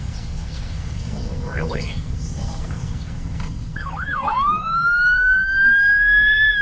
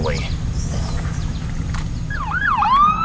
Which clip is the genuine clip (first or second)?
second